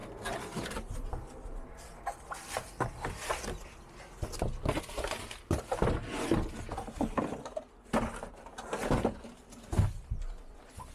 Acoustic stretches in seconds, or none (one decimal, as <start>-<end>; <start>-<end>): 0.0-10.9